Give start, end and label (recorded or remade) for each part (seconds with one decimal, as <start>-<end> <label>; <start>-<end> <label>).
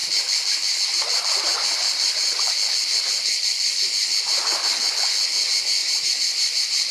0.0-5.8 recorded; 5.8-6.9 remade